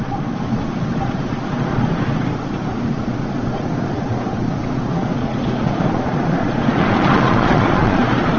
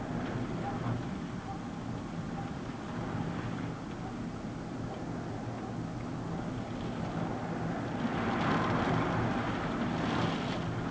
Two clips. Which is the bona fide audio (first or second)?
second